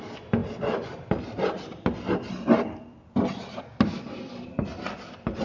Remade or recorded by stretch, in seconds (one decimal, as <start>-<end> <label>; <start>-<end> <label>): 0.0-5.4 recorded